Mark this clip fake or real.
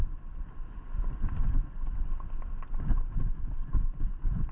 real